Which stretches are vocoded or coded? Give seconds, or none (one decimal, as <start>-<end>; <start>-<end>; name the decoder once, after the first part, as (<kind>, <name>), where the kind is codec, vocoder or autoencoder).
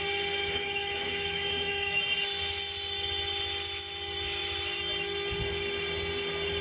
0.4-2.0 (autoencoder, DAC-VAE)